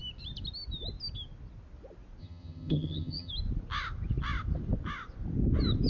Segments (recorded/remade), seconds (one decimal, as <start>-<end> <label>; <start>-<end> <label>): 0.0-2.2 recorded; 2.2-3.3 remade; 3.3-5.9 recorded